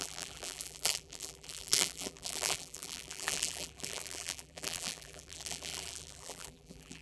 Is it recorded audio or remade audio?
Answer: remade